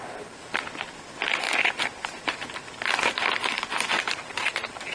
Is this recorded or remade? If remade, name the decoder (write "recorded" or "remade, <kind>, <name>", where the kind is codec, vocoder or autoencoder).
recorded